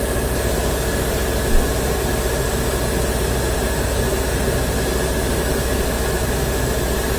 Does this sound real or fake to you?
real